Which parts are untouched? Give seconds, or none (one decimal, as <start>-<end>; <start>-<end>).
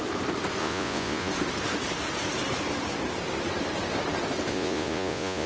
0.0-0.6; 1.3-4.5